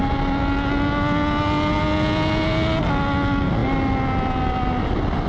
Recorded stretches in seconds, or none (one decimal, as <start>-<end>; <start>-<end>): 0.0-5.3